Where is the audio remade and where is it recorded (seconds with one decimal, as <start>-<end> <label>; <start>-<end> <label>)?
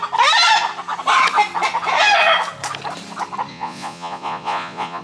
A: 0.0-3.5 recorded; 3.5-5.0 remade